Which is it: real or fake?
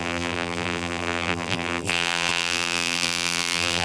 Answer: fake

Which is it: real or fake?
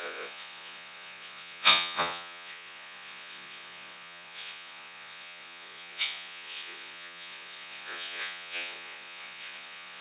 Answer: fake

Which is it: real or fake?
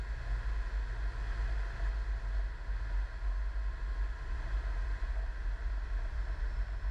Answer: real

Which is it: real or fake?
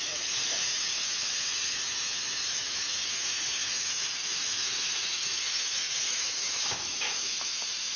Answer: fake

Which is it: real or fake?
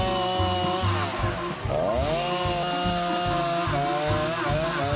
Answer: real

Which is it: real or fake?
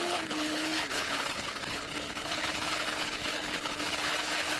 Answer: fake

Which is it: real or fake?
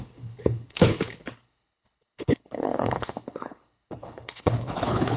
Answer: fake